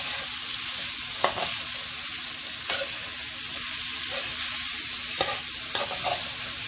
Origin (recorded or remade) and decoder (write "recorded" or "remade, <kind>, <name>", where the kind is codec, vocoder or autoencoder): recorded